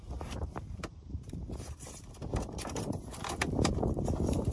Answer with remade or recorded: remade